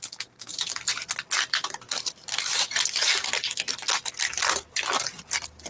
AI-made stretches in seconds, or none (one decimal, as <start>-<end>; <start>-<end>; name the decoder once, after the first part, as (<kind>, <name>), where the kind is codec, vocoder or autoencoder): 0.5-3.1 (vocoder, BigVGAN v2)